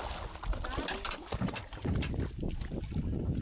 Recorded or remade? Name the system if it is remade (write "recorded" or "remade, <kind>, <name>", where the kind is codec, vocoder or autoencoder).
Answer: recorded